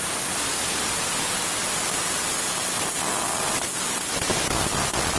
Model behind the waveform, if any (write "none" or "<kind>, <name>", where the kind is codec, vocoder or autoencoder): none